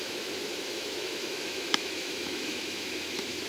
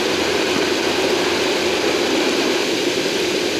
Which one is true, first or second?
second